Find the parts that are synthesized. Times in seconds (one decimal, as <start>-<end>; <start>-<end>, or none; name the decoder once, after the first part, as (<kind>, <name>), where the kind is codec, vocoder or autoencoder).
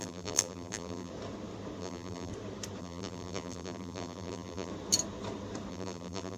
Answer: 0.0-1.1 (vocoder, BigVGAN v2); 1.8-2.3; 2.8-4.7; 5.7-6.4